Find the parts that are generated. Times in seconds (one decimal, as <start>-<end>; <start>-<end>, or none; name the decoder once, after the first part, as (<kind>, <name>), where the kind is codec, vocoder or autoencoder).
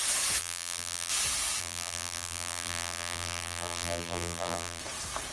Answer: 0.4-1.1 (vocoder, BigVGAN v2); 1.6-4.8